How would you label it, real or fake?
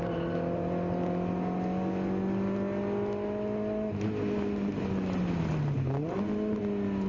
real